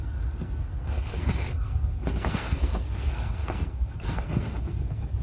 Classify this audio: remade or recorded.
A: remade